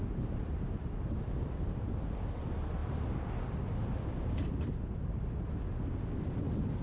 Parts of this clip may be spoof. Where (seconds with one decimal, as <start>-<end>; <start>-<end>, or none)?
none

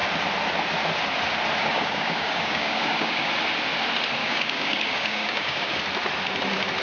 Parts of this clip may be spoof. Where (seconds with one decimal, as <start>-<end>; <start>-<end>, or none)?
1.6-3.3; 4.2-5.8

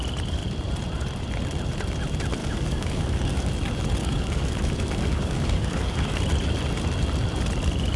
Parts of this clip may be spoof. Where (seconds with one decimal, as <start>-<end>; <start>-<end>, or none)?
2.4-3.5; 4.0-6.2

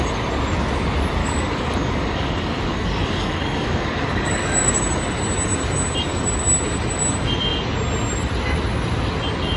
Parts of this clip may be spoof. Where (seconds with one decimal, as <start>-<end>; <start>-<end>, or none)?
1.2-4.8

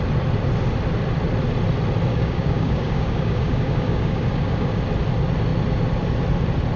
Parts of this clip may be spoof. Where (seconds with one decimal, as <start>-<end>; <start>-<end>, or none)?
2.1-4.8